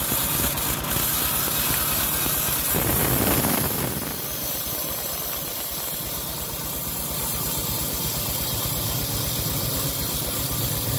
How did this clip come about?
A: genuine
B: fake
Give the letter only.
A